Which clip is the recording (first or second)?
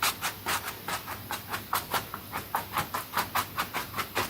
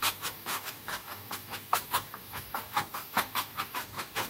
first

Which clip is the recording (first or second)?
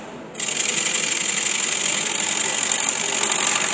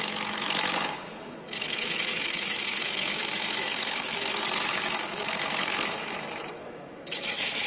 first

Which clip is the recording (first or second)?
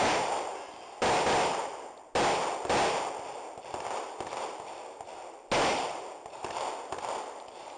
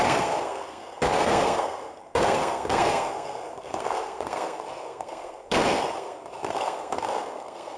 first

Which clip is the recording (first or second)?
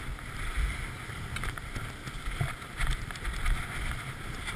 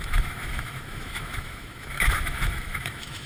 first